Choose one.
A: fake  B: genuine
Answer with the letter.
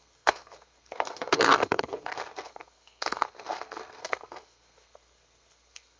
A